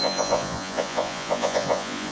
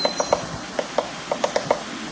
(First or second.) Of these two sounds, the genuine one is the second